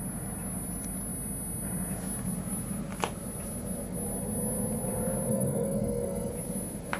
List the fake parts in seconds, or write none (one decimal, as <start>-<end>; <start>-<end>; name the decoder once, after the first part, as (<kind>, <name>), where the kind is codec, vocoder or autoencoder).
5.3-6.3 (codec, SNAC)

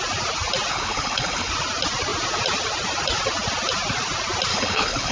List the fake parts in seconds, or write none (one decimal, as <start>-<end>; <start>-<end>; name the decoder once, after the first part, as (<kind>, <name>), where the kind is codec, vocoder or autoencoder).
0.7-1.5 (codec, HILCodec); 4.5-5.1

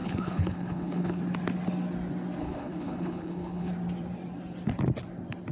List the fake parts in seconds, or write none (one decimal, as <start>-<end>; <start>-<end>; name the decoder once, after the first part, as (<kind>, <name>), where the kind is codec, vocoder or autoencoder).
0.0-1.2 (codec, HILCodec); 2.4-3.7

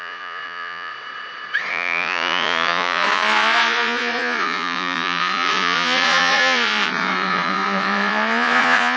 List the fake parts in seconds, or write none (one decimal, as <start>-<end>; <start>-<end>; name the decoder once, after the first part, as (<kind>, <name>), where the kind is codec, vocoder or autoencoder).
0.0-0.9 (vocoder, Vocos); 1.7-9.0

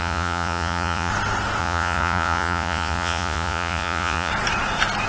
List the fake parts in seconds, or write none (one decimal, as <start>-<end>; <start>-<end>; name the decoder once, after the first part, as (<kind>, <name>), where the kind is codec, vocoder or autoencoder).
0.0-1.1 (vocoder, Vocos); 1.6-4.3

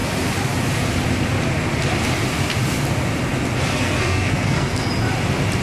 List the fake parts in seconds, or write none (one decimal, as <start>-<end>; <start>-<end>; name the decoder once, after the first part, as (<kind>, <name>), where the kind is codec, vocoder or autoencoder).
3.7-4.9 (codec, SNAC)

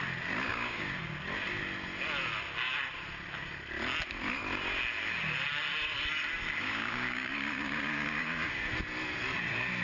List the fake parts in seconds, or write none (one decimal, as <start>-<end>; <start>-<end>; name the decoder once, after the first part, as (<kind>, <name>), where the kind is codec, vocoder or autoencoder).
0.5-1.0 (codec, DAC); 6.6-8.7